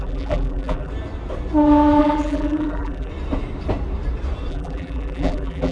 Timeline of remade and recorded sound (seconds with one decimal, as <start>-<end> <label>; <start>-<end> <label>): 0.0-0.9 remade; 0.9-2.0 recorded; 2.0-3.1 remade; 3.1-4.5 recorded; 4.5-5.7 remade